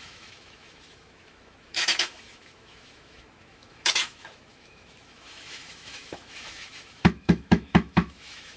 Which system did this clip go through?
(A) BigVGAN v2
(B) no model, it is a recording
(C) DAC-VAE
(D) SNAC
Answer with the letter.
C